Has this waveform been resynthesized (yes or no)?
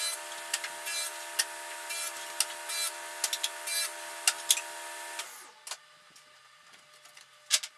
no